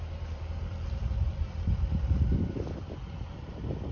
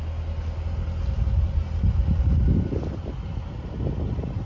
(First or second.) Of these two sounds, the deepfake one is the first